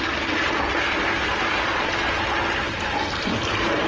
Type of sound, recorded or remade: recorded